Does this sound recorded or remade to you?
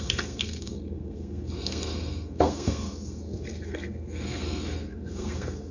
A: remade